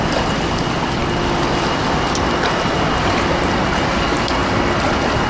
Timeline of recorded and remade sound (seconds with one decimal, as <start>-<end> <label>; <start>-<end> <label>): 0.0-5.3 recorded